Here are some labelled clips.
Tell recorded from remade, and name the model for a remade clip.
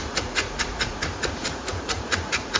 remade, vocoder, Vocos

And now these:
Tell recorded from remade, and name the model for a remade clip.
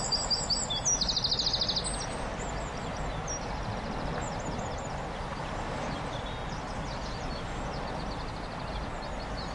recorded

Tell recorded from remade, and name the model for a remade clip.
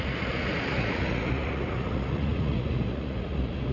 remade, vocoder, Vocos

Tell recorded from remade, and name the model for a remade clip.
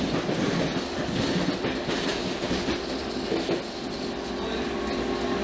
recorded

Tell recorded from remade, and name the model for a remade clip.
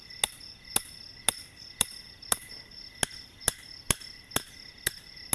recorded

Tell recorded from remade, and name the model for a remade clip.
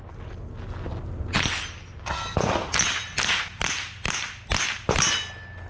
recorded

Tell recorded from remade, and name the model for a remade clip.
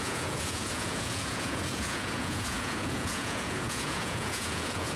remade, vocoder, Vocos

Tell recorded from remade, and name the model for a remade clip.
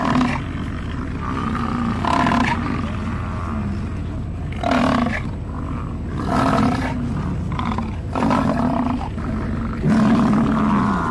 recorded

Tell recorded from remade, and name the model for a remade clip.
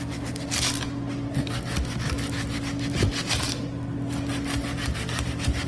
recorded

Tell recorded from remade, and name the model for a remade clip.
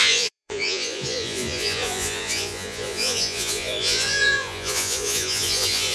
remade, vocoder, Vocos